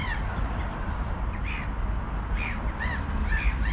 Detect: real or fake real